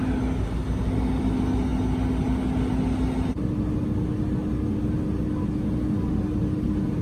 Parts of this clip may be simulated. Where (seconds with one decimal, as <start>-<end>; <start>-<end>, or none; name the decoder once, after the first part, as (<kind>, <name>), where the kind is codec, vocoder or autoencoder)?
none